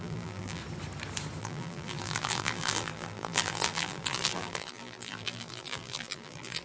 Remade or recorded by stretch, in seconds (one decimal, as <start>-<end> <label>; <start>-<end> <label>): 0.0-0.6 remade; 0.6-1.4 recorded; 1.4-6.6 remade